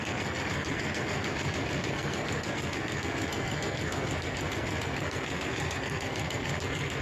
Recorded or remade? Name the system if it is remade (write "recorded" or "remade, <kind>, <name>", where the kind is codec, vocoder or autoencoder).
remade, codec, SNAC